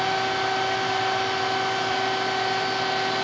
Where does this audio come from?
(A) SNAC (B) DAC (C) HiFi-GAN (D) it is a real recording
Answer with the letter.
D